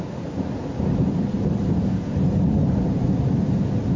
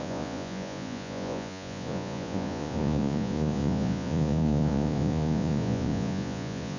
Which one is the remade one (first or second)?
second